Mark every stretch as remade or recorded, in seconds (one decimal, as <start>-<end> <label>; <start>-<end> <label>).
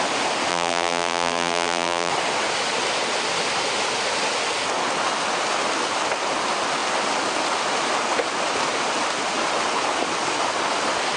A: 0.0-0.5 recorded; 0.5-2.1 remade; 2.1-11.2 recorded